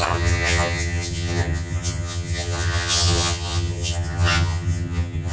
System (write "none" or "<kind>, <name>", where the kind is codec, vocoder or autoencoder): vocoder, HiFi-GAN